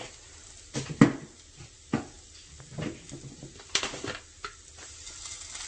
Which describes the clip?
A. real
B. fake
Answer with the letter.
A